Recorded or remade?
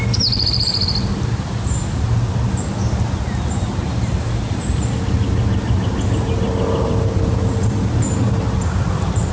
recorded